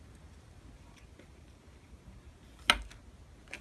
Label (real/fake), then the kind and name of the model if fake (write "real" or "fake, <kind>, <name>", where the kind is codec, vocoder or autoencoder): real